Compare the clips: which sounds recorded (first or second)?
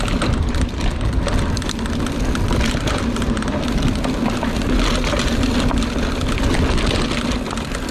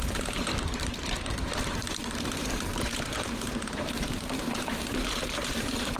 first